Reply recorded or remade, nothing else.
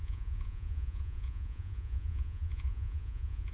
remade